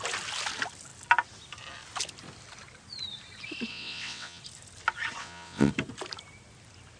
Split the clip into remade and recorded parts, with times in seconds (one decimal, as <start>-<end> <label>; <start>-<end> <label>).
0.0-3.7 recorded; 3.7-4.4 remade; 4.4-5.2 recorded; 5.2-5.7 remade; 5.7-7.0 recorded